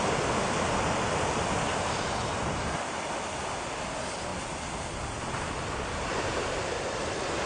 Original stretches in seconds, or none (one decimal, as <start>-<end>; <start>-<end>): 0.0-7.5